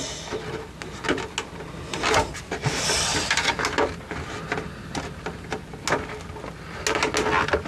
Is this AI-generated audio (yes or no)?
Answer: no